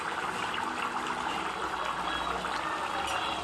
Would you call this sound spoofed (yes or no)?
no